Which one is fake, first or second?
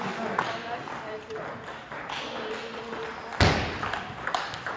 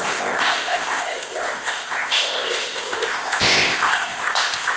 second